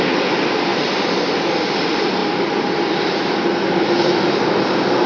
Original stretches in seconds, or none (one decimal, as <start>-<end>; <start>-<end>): 0.0-5.1